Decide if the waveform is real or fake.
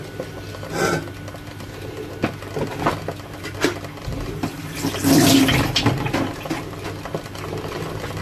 real